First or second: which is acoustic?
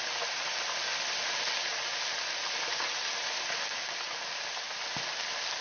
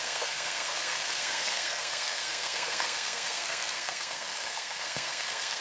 first